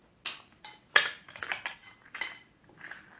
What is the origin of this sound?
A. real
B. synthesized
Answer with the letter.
A